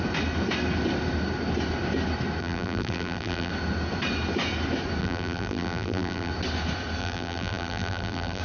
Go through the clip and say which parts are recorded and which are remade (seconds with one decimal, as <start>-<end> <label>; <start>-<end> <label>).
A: 0.0-2.4 recorded; 2.4-3.5 remade; 3.5-5.0 recorded; 5.0-6.3 remade; 6.3-7.0 recorded; 7.0-8.4 remade